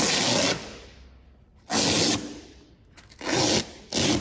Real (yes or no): yes